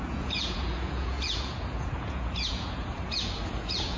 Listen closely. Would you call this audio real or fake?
fake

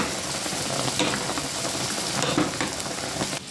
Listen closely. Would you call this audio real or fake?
real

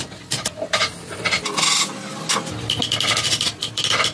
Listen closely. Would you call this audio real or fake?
real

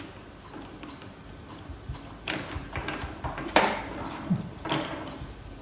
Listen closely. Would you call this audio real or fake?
real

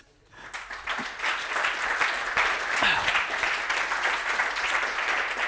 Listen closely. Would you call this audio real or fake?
real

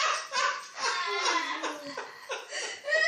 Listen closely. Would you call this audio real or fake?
fake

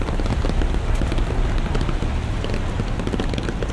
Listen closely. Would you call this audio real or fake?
real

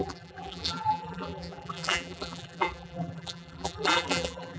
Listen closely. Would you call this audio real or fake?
fake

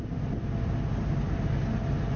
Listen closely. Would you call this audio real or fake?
real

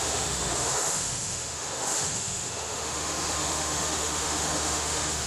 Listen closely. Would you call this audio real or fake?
fake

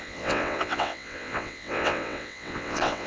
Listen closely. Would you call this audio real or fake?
fake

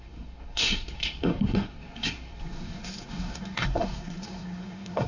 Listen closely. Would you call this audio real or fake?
fake